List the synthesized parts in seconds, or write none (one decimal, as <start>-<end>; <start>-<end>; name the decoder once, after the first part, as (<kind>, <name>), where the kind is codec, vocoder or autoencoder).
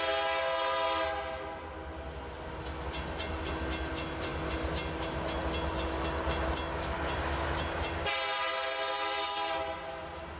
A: none